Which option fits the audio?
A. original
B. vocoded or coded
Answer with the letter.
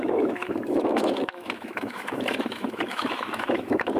B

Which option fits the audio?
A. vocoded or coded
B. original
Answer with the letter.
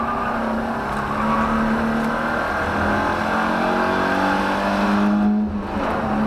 B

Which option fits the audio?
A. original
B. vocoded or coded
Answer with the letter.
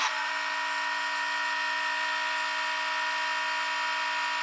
A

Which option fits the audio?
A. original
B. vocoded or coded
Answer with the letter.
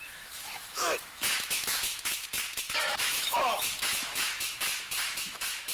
B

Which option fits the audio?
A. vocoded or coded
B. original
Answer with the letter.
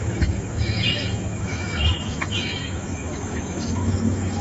A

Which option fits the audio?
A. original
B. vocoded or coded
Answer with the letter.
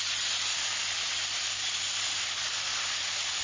A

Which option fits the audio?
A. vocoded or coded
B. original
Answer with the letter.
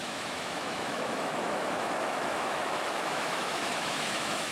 A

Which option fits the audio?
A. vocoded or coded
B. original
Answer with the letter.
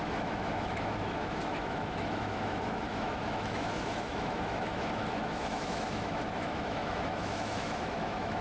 A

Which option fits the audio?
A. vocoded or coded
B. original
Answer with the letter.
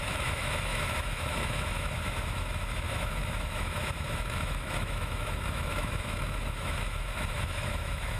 A